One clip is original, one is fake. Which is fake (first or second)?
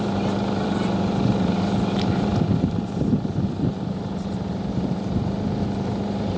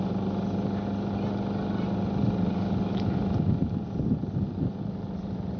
first